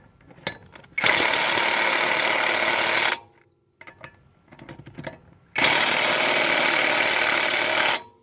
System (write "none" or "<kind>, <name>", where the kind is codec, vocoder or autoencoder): none